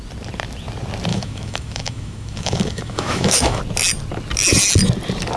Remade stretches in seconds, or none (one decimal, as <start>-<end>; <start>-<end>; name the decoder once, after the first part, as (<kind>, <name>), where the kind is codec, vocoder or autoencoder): 1.1-3.6 (autoencoder, DAC-VAE)